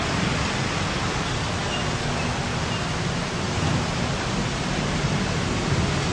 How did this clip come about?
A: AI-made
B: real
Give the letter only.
B